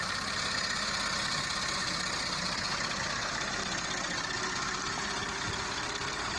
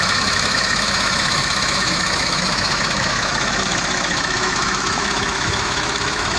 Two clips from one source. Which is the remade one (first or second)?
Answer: second